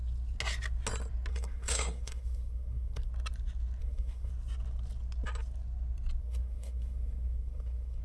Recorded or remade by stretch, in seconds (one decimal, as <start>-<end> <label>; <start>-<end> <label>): 0.0-1.3 recorded; 1.3-3.1 remade; 3.1-3.8 recorded; 3.8-4.3 remade; 4.3-6.2 recorded; 6.2-8.0 remade